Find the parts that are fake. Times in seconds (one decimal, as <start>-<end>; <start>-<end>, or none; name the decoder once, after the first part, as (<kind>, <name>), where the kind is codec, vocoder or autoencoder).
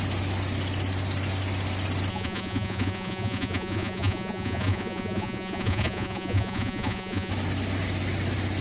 2.1-7.3 (vocoder, Vocos)